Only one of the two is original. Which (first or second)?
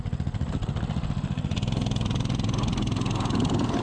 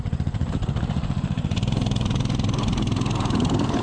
first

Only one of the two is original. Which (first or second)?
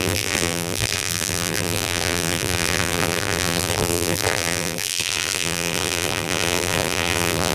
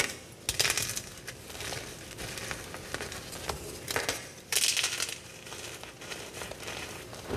second